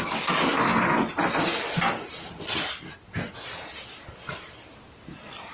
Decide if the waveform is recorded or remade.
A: recorded